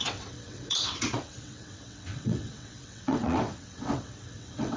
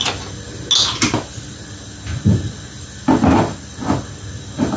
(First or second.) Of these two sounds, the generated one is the first